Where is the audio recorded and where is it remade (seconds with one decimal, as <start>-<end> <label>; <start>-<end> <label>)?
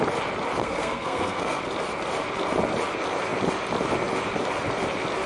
0.0-0.6 recorded; 0.6-1.6 remade; 1.6-5.3 recorded